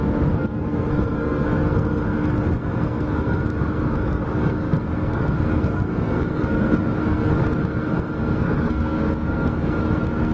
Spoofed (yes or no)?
yes